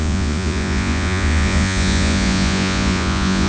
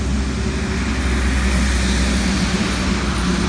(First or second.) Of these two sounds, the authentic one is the second